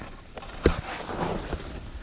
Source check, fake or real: real